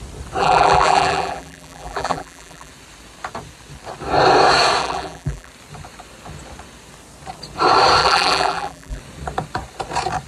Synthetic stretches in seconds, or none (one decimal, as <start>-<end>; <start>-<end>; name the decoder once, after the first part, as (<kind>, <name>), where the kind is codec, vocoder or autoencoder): 0.4-2.7 (vocoder, BigVGAN v2); 4.8-5.5; 8.0-9.0